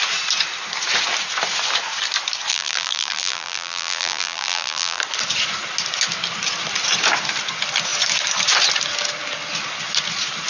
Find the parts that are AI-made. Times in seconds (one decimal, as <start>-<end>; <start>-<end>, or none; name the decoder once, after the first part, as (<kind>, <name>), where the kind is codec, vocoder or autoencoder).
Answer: 2.5-5.0 (vocoder, BigVGAN v2)

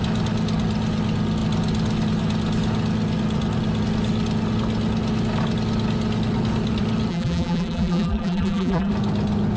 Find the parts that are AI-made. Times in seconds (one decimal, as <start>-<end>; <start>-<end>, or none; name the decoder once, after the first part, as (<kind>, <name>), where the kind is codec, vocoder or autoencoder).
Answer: 7.1-8.9 (vocoder, BigVGAN v2)

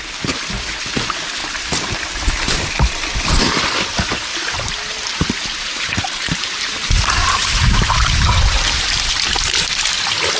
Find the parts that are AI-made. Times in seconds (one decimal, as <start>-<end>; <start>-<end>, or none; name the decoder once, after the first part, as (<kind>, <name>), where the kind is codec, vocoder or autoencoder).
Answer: 1.4-2.3 (vocoder, BigVGAN v2); 4.3-9.1

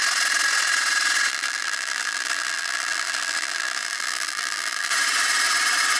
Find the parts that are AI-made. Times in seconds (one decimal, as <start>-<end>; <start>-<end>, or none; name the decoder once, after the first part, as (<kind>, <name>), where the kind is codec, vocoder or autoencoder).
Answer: 1.3-4.9 (vocoder, BigVGAN v2)

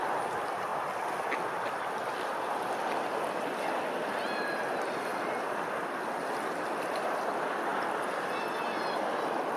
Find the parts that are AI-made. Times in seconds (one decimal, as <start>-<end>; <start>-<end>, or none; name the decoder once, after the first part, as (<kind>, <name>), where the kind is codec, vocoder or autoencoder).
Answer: 0.0-5.1 (vocoder, BigVGAN v2); 7.3-7.7; 9.1-9.6

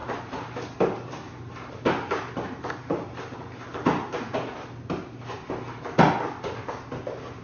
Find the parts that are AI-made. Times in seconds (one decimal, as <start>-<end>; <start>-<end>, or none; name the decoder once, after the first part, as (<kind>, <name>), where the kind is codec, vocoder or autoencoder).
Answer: 0.0-3.2 (vocoder, BigVGAN v2); 3.7-4.5